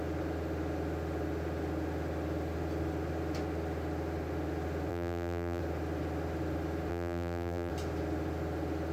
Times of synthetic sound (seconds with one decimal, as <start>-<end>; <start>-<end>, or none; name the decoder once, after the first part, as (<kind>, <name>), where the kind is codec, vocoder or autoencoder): 4.9-5.6 (vocoder, BigVGAN v2); 6.9-7.7